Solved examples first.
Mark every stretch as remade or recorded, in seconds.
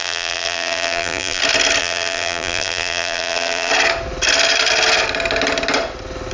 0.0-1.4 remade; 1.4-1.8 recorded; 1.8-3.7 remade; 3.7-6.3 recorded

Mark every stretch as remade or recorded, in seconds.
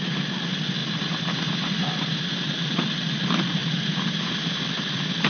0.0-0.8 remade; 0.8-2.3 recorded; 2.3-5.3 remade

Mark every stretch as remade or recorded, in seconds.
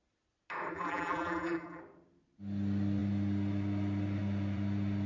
0.0-0.7 recorded; 0.7-1.8 remade; 1.8-5.1 recorded